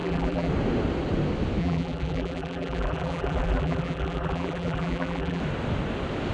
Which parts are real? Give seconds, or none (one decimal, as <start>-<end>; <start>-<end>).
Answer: 0.5-1.6; 5.4-6.3